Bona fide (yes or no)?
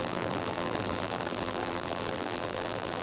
no